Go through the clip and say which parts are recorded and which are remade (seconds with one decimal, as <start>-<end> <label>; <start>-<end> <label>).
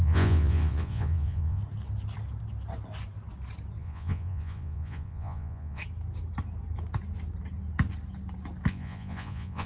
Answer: 0.0-1.6 remade; 1.6-3.8 recorded; 3.8-5.8 remade; 5.8-8.7 recorded; 8.7-9.7 remade